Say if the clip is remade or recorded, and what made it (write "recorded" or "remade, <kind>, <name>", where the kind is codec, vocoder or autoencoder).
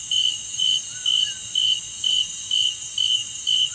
recorded